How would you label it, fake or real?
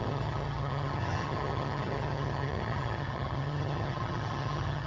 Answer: fake